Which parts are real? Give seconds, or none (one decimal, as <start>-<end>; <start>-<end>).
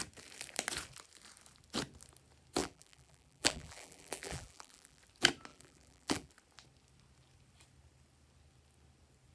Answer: 0.0-2.6; 5.0-5.5; 6.3-9.3